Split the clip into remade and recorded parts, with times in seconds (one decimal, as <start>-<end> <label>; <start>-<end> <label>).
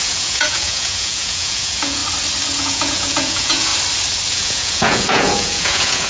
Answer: 0.0-2.0 remade; 2.0-2.6 recorded; 2.6-3.7 remade; 3.7-4.3 recorded; 4.3-6.1 remade